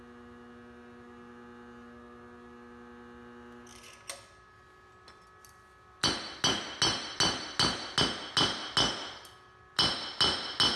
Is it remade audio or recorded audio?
recorded